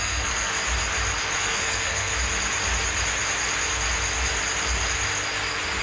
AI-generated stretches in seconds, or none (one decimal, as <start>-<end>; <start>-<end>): 0.0-0.5; 1.4-2.1